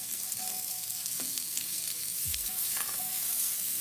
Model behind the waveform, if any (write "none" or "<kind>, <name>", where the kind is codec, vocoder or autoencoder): codec, SNAC